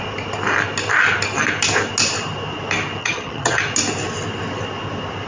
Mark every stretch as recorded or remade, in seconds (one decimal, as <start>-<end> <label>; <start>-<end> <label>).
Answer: 0.0-3.0 recorded; 3.0-3.6 remade; 3.6-5.3 recorded